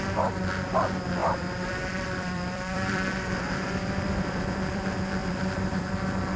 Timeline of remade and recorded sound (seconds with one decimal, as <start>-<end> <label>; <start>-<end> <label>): 0.0-1.2 recorded; 1.2-4.8 remade; 4.8-5.2 recorded; 5.2-5.9 remade; 5.9-6.4 recorded